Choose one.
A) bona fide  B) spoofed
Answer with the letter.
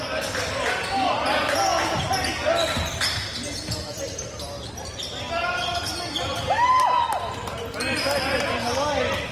A